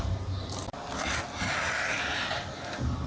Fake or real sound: real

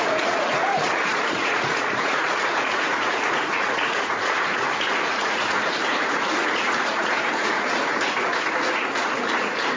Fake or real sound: fake